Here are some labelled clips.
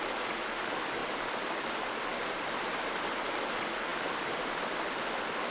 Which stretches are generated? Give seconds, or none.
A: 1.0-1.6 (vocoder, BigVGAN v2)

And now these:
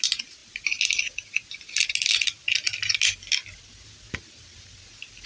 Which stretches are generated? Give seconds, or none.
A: none

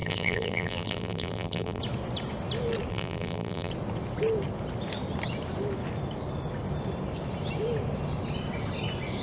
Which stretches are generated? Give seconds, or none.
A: 0.0-1.8 (vocoder, BigVGAN v2); 2.9-3.7